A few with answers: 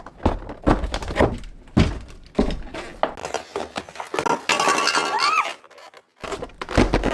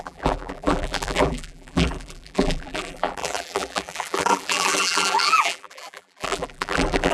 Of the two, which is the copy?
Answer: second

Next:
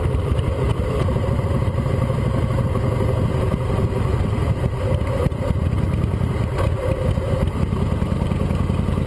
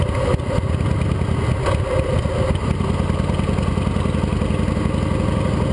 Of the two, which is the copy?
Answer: first